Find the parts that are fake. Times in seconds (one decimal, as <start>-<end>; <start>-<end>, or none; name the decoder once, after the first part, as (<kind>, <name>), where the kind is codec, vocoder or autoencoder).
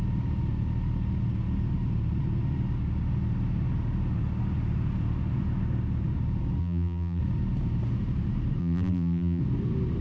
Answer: 6.6-7.2 (vocoder, BigVGAN v2); 8.6-9.4